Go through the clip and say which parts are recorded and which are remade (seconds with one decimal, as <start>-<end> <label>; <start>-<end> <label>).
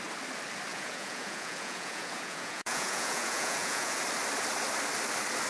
0.0-0.7 recorded; 0.7-4.0 remade; 4.0-5.5 recorded